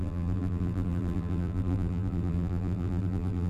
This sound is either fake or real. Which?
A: fake